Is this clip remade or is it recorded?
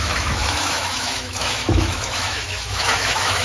remade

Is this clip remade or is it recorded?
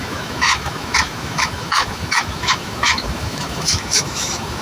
remade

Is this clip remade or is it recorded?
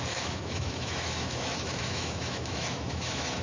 remade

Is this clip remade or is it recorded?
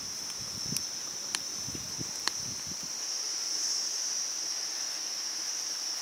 recorded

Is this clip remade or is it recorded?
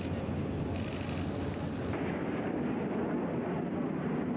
recorded